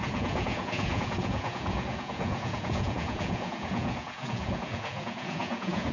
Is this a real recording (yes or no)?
no